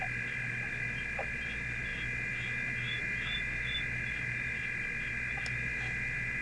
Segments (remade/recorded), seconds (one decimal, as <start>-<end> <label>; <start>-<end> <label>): 0.0-6.4 recorded

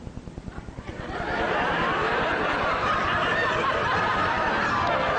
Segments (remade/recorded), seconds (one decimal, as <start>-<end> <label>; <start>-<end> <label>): 0.0-0.9 recorded; 0.9-4.0 remade; 4.0-5.2 recorded

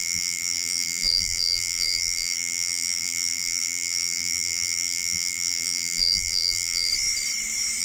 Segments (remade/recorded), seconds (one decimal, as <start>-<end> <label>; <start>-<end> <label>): 0.0-6.9 remade; 6.9-7.8 recorded

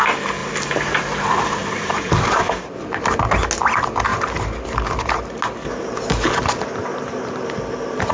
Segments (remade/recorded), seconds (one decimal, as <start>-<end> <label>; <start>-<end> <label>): 0.0-0.4 recorded; 0.4-3.0 remade; 3.0-8.1 recorded

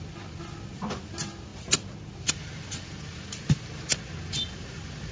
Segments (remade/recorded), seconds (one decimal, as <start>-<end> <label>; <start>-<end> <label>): 0.0-5.1 recorded